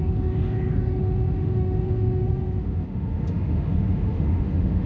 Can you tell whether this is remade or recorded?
remade